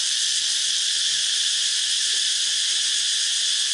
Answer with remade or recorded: recorded